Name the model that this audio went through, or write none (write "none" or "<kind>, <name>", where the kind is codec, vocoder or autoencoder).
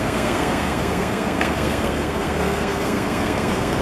codec, SNAC